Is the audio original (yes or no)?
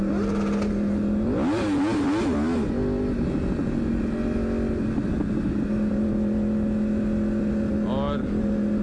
yes